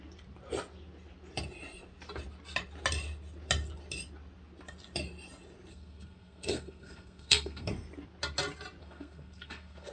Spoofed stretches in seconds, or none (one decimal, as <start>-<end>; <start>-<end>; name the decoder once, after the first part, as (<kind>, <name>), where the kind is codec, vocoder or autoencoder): 5.7-7.7 (codec, SNAC); 8.8-9.9